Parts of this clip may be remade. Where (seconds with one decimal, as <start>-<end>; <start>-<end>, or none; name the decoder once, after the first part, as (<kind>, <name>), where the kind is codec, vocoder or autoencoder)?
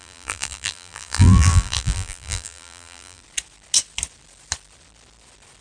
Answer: 0.0-3.2 (vocoder, BigVGAN v2)